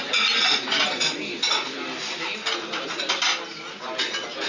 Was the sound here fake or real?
real